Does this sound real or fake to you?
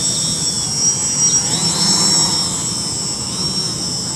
real